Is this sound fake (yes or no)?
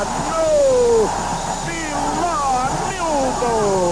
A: no